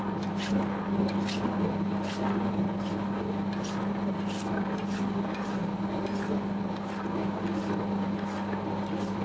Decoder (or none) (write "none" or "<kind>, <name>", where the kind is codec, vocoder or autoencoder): none